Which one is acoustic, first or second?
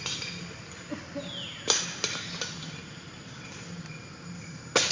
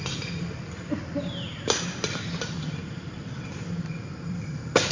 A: first